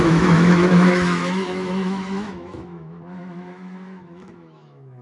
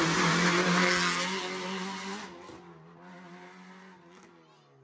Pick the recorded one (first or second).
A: second